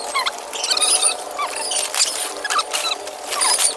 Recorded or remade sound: recorded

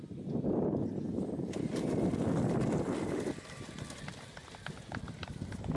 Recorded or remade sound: recorded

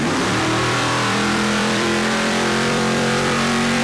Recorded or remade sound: remade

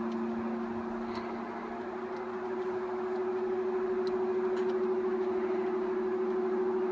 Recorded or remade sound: recorded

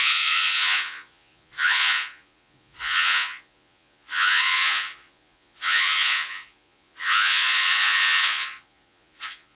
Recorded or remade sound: remade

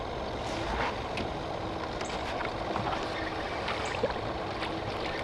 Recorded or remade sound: recorded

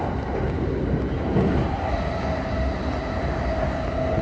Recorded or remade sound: recorded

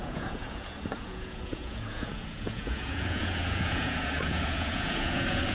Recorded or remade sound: remade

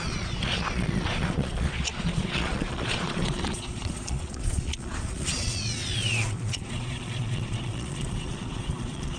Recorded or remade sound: remade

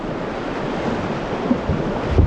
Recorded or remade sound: recorded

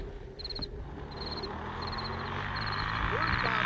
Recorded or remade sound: recorded